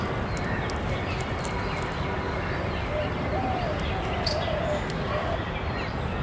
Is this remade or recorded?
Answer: recorded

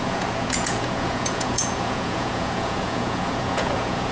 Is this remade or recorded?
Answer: remade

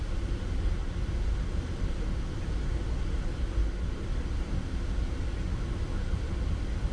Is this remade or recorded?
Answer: recorded